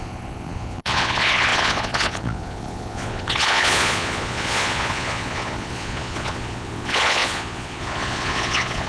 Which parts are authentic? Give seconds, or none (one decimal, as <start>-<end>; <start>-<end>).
none